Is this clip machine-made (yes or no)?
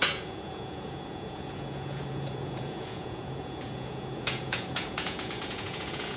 yes